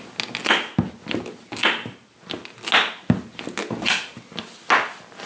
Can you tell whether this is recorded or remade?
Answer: recorded